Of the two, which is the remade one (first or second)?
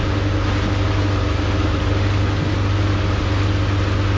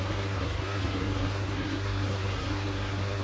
second